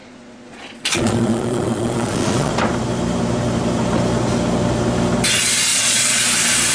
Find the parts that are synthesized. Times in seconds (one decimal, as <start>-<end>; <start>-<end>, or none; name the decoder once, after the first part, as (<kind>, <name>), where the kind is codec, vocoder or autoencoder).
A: 0.0-2.5 (vocoder, Vocos); 5.7-6.2